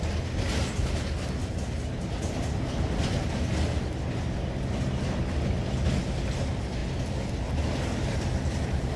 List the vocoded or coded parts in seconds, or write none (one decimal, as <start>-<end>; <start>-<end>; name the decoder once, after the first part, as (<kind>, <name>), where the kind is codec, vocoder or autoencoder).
none